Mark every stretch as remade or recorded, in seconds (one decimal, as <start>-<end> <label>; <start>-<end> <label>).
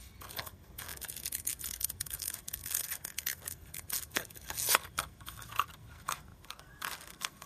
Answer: 0.0-7.5 remade